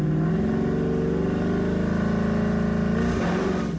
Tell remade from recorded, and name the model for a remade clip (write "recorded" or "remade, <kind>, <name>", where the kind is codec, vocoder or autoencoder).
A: recorded